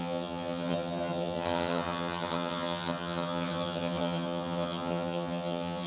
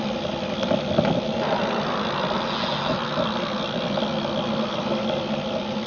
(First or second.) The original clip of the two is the second